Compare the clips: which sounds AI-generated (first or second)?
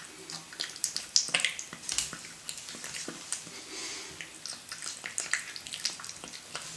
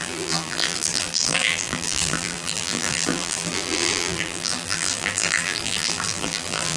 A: second